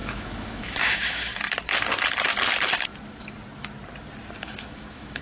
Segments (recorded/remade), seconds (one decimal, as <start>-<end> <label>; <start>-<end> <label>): 0.0-1.3 remade; 1.3-4.4 recorded; 4.4-5.2 remade